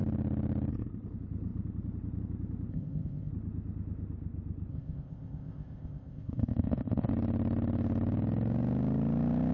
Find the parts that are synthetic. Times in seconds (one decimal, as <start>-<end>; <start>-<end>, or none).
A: 2.7-3.3; 4.7-7.1

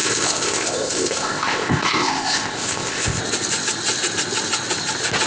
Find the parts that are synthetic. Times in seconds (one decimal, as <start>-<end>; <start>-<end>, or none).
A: 0.0-3.2

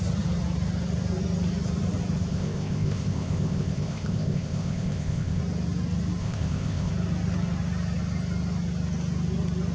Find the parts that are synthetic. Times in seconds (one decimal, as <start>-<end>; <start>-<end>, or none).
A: 2.3-5.4; 6.2-6.9

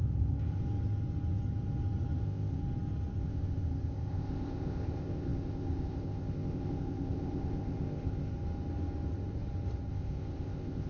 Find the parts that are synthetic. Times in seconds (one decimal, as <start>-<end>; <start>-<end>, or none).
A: 0.0-0.6; 2.2-2.6; 3.2-8.3; 9.9-10.9

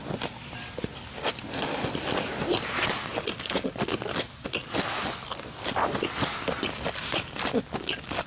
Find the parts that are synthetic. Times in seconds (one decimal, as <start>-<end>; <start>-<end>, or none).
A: none